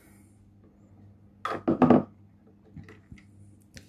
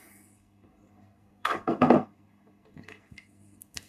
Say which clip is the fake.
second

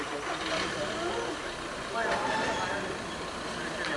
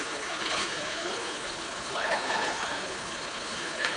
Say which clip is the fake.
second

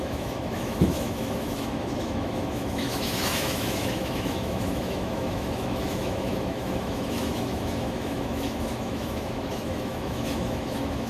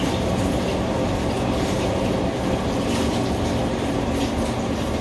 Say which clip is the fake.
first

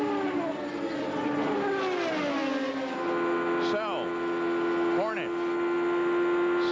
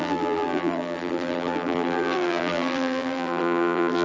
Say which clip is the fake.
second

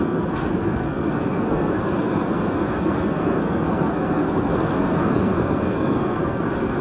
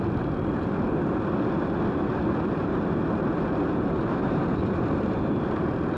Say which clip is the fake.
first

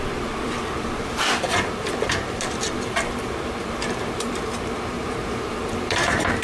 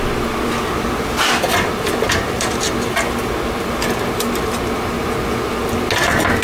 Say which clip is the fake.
first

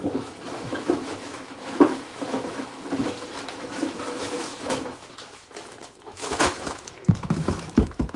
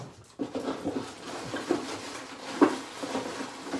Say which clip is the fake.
first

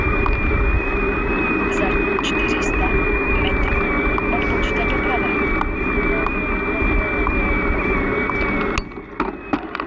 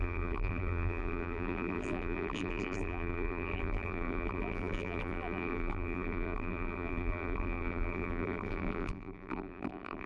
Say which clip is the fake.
second